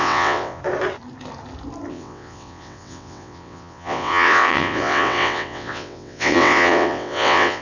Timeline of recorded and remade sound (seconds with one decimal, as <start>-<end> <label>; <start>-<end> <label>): 0.0-0.6 remade; 0.6-1.9 recorded; 1.9-7.6 remade